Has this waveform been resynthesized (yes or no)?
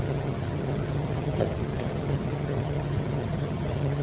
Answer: yes